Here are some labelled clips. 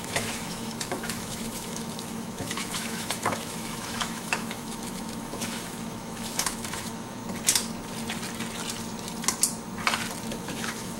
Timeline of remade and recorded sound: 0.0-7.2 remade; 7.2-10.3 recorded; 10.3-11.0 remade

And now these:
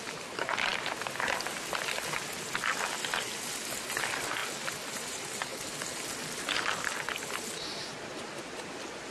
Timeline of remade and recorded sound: 0.0-9.1 recorded

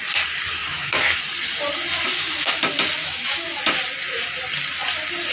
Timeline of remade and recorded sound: 0.0-0.6 recorded; 0.6-1.2 remade; 1.2-2.1 recorded; 2.1-2.6 remade; 2.6-3.0 recorded; 3.0-3.6 remade; 3.6-5.3 recorded

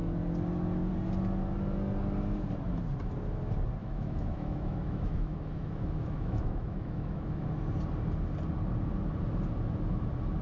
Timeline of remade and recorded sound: 0.0-3.8 recorded; 3.8-7.5 remade; 7.5-10.4 recorded

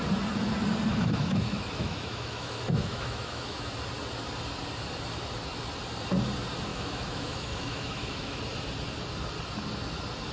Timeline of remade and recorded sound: 0.0-0.9 recorded; 0.9-3.7 remade; 3.7-6.7 recorded; 6.7-8.4 remade; 8.4-10.3 recorded

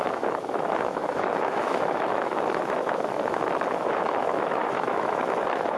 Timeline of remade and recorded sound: 0.0-5.8 remade

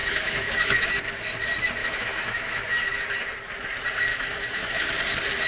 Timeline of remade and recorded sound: 0.0-0.9 remade; 0.9-1.8 recorded; 1.8-3.0 remade; 3.0-4.1 recorded; 4.1-4.9 remade; 4.9-5.5 recorded